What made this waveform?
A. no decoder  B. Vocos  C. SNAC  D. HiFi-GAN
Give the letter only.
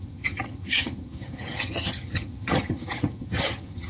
D